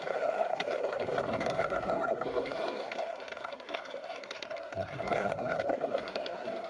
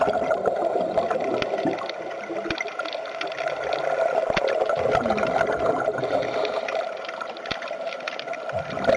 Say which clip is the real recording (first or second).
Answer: second